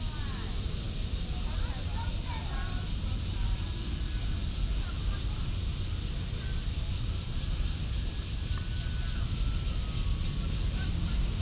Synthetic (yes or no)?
no